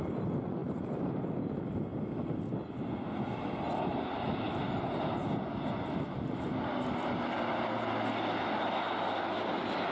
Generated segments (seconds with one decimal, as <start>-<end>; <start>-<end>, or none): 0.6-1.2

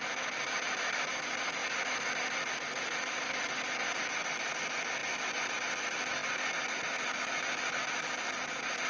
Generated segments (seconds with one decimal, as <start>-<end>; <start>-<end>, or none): none

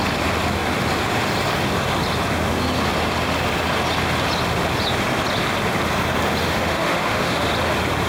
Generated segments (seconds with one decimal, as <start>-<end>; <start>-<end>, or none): 6.4-7.5

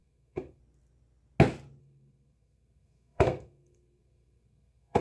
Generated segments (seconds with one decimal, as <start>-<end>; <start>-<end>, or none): 0.0-0.6; 1.8-5.0